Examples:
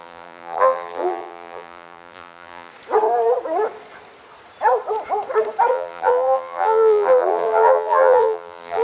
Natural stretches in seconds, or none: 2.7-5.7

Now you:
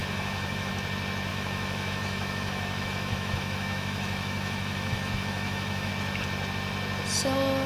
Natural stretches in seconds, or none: 0.7-1.3; 5.9-7.7